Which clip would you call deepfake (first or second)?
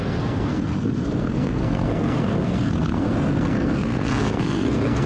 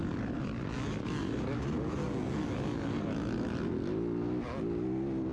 first